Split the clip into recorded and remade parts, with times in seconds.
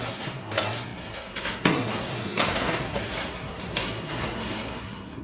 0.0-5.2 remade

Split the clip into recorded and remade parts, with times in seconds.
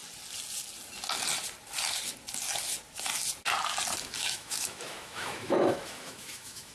0.0-4.0 recorded; 4.0-6.7 remade